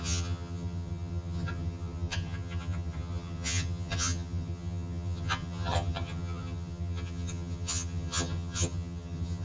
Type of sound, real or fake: fake